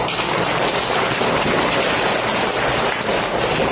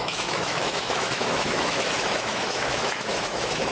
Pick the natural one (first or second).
first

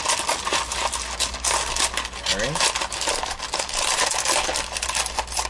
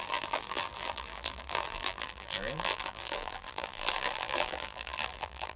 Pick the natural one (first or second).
first